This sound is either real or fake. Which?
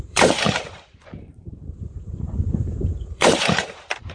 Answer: fake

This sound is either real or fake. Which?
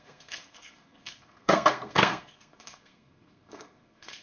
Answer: fake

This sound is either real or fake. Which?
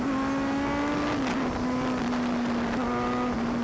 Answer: real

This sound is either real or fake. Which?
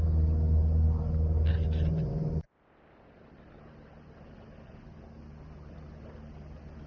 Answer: real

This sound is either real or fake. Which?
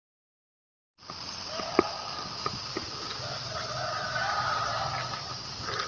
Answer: real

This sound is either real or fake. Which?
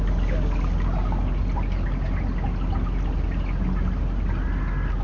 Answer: real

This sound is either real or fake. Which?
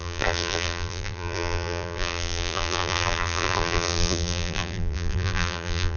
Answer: fake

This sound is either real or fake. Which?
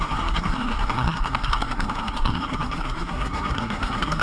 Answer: fake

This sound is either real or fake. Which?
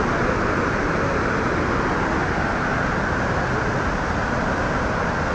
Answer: real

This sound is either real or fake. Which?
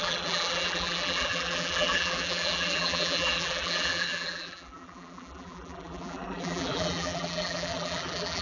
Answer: fake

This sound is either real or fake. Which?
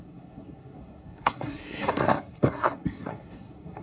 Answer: fake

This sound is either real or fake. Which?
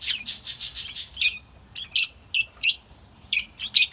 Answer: real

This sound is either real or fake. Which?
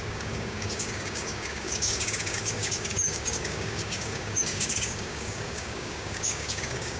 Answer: fake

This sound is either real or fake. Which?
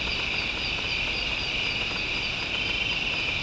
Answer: real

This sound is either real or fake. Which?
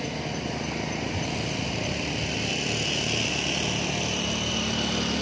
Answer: real